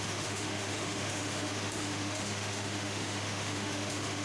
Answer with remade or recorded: remade